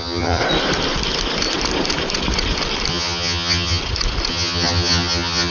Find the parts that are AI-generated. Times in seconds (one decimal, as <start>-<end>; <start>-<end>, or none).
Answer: 0.0-0.4; 2.9-3.8; 4.3-5.5

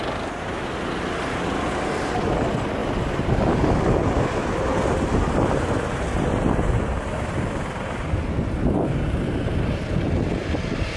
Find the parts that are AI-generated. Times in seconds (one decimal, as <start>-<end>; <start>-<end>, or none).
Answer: none

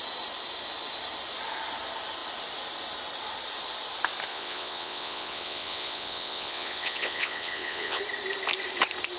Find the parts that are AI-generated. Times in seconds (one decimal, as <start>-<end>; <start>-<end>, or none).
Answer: 4.3-8.0